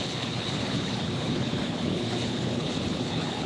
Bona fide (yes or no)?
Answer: no